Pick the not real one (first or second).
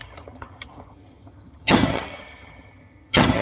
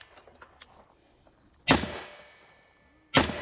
first